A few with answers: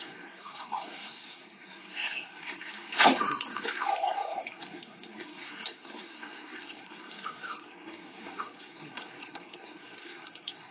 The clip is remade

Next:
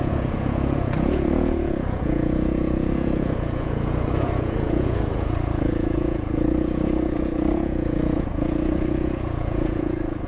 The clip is remade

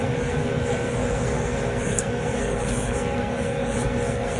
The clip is remade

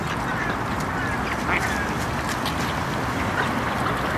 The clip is recorded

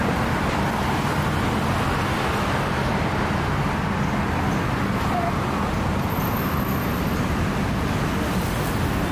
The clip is recorded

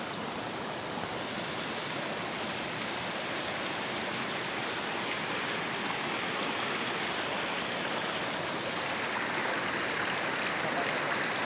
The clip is recorded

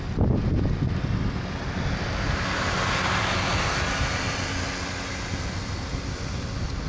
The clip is recorded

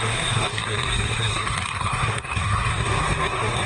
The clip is remade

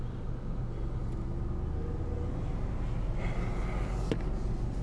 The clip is recorded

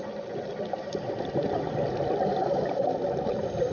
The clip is recorded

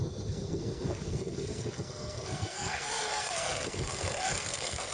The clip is remade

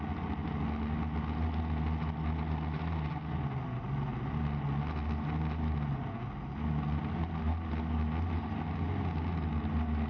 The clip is recorded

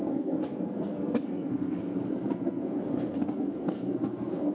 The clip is remade